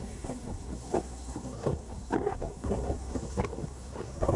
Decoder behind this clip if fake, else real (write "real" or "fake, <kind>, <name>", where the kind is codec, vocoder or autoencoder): fake, codec, SNAC